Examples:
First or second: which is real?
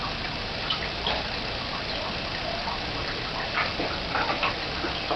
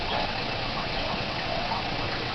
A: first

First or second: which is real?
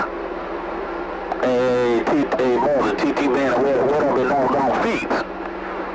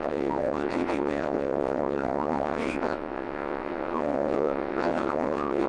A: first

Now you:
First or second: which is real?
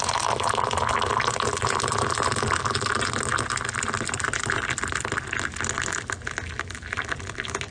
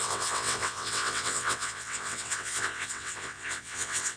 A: first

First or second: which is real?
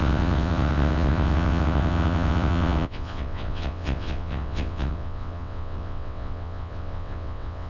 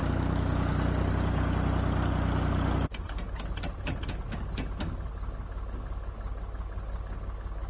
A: second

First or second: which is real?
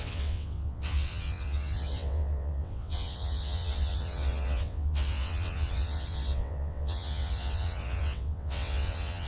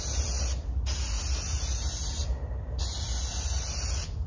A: second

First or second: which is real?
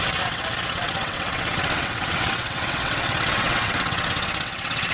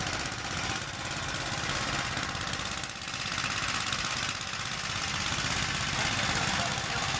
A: second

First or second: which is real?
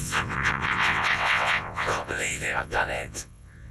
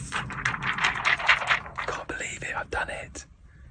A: second